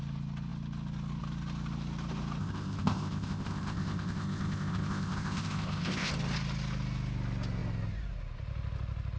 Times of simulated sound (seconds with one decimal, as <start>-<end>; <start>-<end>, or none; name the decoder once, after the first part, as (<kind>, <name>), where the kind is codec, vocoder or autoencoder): 2.4-6.1 (codec, ZipCodec)